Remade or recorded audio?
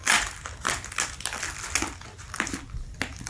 recorded